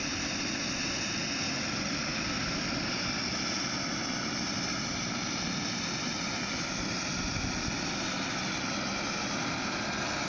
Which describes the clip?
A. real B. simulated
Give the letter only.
A